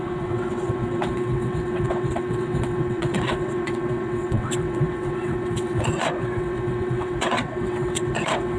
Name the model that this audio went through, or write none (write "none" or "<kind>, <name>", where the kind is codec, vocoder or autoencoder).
vocoder, WaveNeXt